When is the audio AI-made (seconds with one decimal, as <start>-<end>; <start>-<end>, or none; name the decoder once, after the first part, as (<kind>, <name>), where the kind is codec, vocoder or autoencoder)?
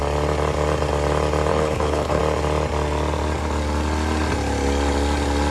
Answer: 1.5-2.2 (codec, HILCodec)